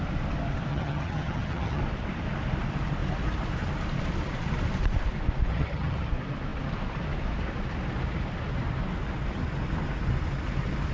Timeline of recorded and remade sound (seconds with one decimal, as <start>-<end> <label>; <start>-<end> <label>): 0.0-0.7 recorded; 0.7-1.8 remade; 1.8-5.5 recorded; 5.5-6.1 remade; 6.1-10.9 recorded